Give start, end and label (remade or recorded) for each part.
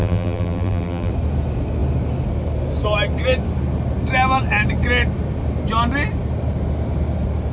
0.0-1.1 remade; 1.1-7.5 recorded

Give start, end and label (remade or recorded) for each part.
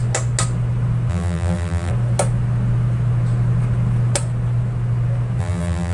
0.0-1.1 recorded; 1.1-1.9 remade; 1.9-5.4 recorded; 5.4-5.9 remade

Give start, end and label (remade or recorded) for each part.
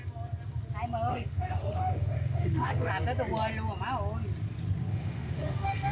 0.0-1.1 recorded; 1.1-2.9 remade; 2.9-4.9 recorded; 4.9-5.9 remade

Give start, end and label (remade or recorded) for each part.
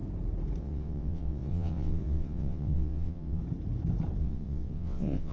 0.0-0.6 recorded; 0.6-3.4 remade; 3.4-4.2 recorded; 4.2-5.3 remade